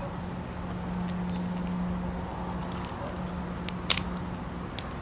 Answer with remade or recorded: recorded